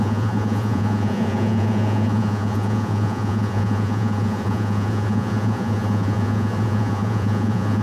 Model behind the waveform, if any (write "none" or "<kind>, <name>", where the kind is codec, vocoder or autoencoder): vocoder, Vocos